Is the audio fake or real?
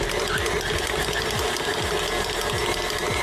real